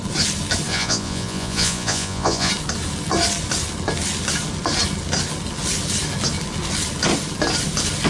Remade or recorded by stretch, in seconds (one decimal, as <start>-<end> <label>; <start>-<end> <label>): 0.0-0.7 recorded; 0.7-2.5 remade; 2.5-8.1 recorded